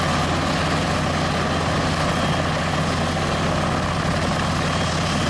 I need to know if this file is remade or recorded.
recorded